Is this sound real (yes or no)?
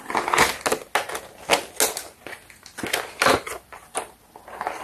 yes